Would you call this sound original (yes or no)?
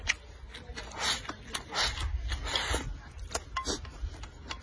yes